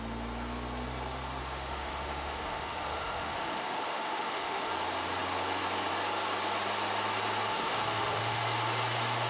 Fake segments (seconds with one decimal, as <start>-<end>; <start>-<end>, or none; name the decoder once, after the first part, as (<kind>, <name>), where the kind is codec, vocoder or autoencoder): 1.4-4.7 (autoencoder, DAC-VAE); 7.5-8.4